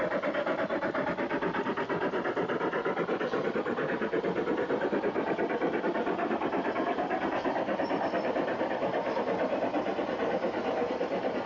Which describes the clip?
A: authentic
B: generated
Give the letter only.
A